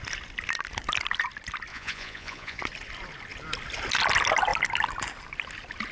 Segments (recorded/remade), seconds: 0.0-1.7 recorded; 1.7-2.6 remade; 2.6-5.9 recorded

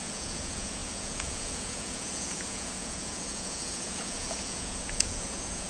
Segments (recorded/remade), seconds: 0.0-5.7 remade

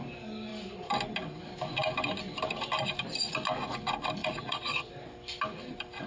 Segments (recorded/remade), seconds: 0.0-4.2 recorded; 4.2-4.9 remade; 4.9-6.1 recorded

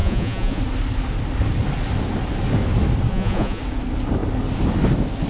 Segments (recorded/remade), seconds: 0.0-0.6 remade; 0.6-3.1 recorded; 3.1-3.6 remade; 3.6-5.3 recorded